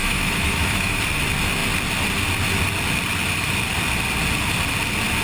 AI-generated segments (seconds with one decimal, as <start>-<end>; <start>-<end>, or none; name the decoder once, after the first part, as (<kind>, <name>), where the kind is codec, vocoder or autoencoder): 0.0-1.0 (autoencoder, DAC-VAE)